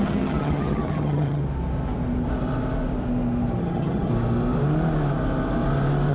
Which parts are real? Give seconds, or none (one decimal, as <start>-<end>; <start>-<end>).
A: 1.4-3.6; 4.1-6.1